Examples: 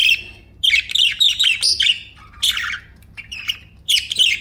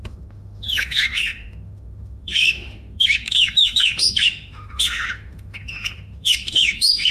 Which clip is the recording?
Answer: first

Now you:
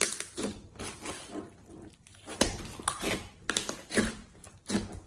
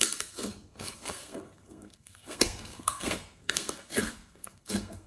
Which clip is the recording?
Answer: first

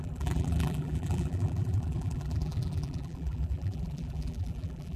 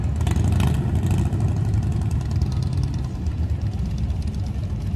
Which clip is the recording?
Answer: second